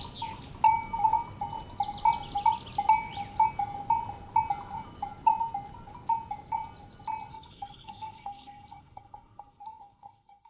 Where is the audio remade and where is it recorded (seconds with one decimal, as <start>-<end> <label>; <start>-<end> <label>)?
0.0-7.3 recorded; 7.3-10.5 remade